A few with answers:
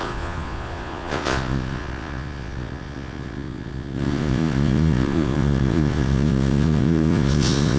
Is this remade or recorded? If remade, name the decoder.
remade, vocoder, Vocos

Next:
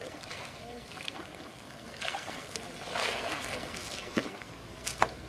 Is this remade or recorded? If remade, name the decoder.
remade, codec, SNAC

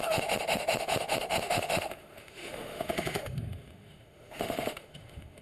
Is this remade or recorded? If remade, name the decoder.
remade, autoencoder, DAC-VAE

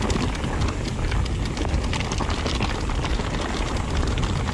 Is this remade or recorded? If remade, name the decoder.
recorded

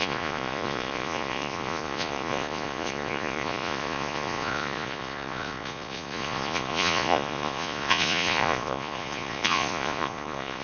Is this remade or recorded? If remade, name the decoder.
remade, vocoder, Vocos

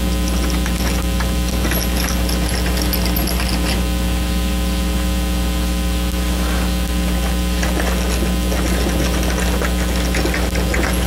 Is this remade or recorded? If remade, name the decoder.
recorded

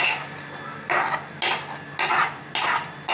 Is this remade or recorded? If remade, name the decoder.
recorded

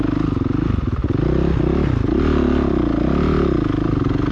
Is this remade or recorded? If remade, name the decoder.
recorded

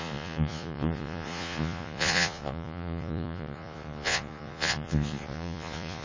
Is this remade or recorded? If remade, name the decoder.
remade, vocoder, Vocos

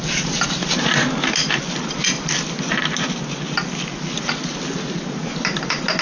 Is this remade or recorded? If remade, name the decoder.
recorded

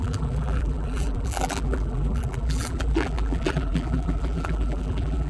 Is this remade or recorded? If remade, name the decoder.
remade, vocoder, BigVGAN v2